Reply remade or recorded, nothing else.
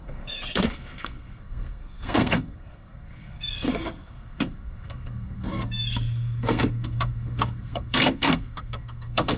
remade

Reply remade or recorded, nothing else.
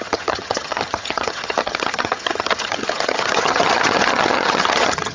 remade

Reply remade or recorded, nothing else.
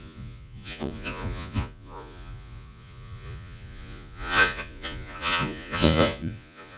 remade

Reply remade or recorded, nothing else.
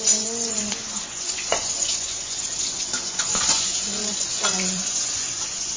remade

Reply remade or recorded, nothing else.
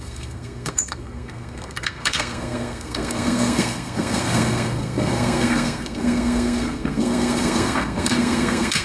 remade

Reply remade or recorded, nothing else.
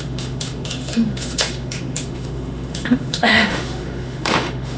remade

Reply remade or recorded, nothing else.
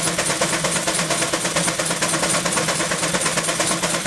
recorded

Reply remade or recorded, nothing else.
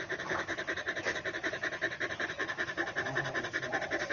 recorded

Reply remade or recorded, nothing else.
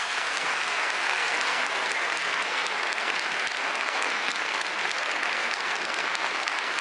remade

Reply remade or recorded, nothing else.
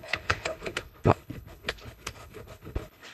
remade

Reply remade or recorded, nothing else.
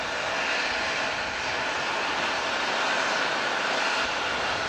recorded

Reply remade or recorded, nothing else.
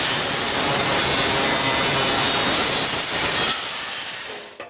remade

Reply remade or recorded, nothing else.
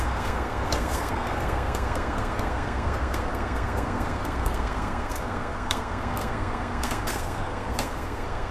remade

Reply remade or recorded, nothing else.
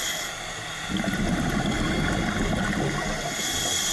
recorded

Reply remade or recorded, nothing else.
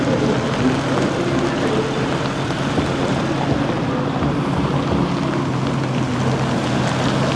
recorded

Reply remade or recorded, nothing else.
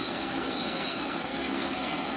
remade